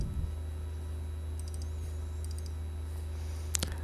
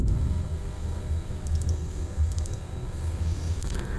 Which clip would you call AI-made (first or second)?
second